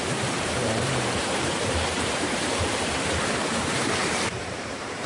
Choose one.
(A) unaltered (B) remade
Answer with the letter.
B